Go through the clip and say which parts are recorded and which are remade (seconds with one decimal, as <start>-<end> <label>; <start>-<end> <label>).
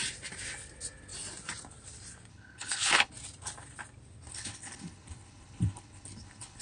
0.0-2.3 recorded; 2.3-3.1 remade; 3.1-4.3 recorded; 4.3-6.6 remade